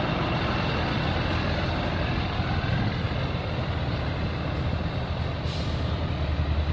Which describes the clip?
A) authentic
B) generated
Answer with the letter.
A